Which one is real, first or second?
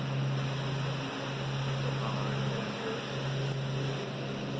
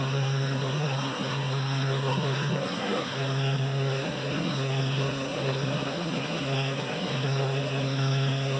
first